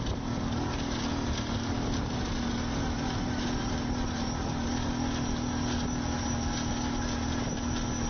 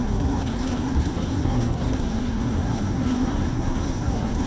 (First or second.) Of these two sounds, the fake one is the second